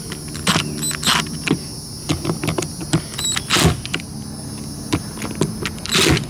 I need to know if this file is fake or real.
real